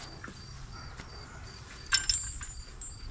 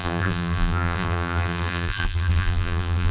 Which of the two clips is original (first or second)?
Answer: first